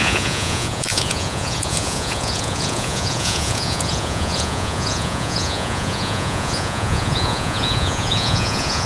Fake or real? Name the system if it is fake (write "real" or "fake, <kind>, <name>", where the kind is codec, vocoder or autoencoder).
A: fake, vocoder, Vocos